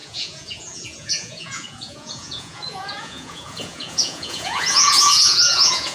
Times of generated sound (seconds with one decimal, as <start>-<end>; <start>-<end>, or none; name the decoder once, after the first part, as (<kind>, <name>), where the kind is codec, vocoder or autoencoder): 0.0-5.9 (vocoder, Vocos)